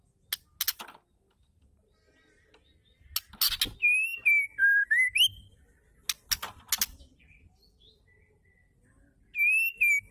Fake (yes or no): no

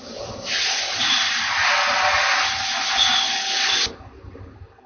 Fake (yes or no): no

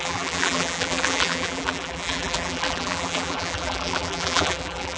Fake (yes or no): yes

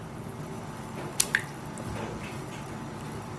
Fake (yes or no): no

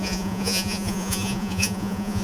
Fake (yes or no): yes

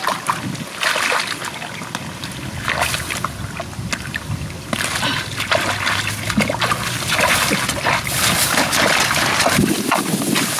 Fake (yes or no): no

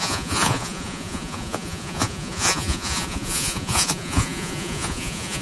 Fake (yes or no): yes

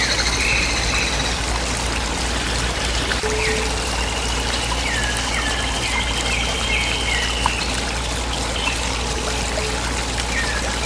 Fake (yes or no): yes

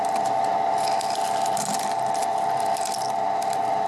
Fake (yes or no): no